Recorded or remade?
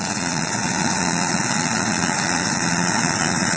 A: remade